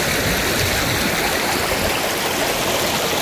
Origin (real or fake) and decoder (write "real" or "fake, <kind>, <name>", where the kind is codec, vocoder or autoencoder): real